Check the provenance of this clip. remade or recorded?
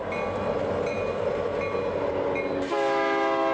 recorded